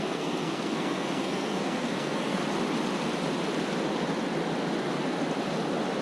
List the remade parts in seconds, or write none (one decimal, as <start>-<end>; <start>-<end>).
0.0-2.4